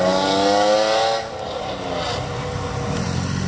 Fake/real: real